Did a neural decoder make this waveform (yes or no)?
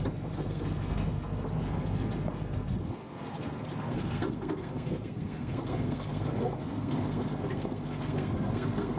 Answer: yes